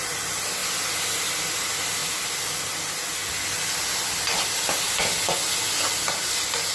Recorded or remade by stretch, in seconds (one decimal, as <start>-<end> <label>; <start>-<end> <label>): 0.0-2.0 recorded; 2.0-2.6 remade; 2.6-3.2 recorded; 3.2-4.5 remade; 4.5-6.7 recorded